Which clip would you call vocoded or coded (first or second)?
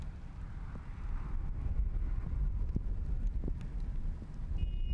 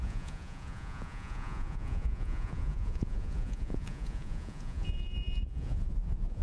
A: second